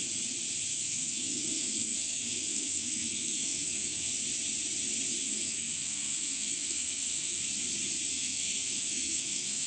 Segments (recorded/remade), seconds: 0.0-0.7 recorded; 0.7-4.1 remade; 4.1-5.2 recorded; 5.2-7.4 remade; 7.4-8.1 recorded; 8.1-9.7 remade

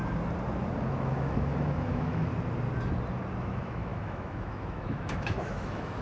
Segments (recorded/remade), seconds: 0.0-0.9 recorded; 0.9-2.3 remade; 2.3-3.4 recorded; 3.4-6.0 remade

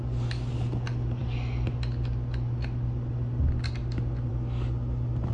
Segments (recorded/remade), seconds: 0.0-5.3 recorded

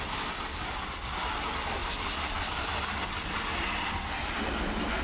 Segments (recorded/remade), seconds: 0.0-5.0 recorded

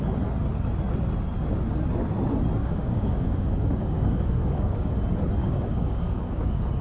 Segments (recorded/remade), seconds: 0.0-2.6 recorded; 2.6-4.9 remade; 4.9-5.4 recorded; 5.4-6.8 remade

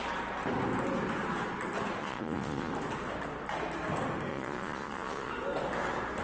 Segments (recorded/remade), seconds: 0.0-2.0 recorded; 2.0-2.7 remade; 2.7-4.3 recorded; 4.3-5.3 remade; 5.3-6.2 recorded